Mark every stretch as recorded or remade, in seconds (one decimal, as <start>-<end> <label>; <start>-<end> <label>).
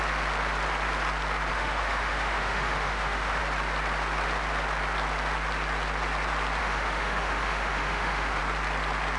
0.0-1.5 recorded; 1.5-3.4 remade; 3.4-6.6 recorded; 6.6-8.4 remade; 8.4-9.2 recorded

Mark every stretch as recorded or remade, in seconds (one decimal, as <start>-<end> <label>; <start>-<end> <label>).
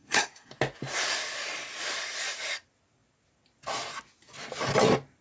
0.0-0.5 remade; 0.5-5.2 recorded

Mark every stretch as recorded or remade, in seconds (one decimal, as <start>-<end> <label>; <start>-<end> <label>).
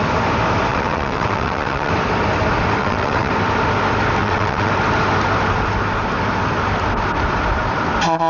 0.0-0.7 recorded; 0.7-1.9 remade; 1.9-2.8 recorded; 2.8-3.3 remade; 3.3-4.2 recorded; 4.2-4.7 remade; 4.7-8.3 recorded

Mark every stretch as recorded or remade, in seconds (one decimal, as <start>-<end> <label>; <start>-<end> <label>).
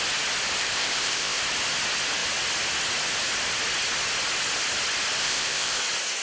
0.0-0.6 recorded; 0.6-1.4 remade; 1.4-5.2 recorded; 5.2-5.8 remade; 5.8-6.2 recorded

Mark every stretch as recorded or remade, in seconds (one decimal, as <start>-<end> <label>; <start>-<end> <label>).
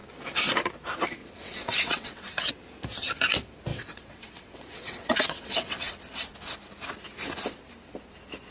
0.0-1.2 recorded; 1.2-2.5 remade; 2.5-3.7 recorded; 3.7-5.9 remade; 5.9-8.5 recorded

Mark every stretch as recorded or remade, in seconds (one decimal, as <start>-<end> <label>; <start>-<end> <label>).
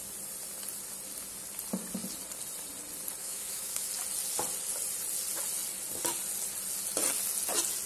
0.0-3.2 recorded; 3.2-3.9 remade; 3.9-7.9 recorded